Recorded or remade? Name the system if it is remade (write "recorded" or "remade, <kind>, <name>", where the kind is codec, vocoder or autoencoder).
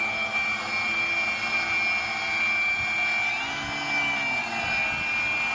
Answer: recorded